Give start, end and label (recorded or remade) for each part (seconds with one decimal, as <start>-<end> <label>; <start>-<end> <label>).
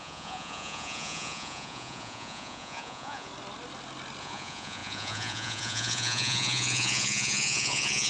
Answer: 0.0-3.3 remade; 3.3-4.2 recorded; 4.2-8.1 remade